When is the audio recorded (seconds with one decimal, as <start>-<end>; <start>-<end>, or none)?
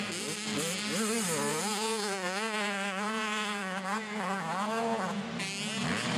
0.0-1.5; 5.2-6.2